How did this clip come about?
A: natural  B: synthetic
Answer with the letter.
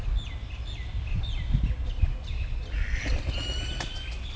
A